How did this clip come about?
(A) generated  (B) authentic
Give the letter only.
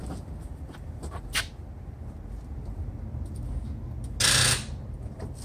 B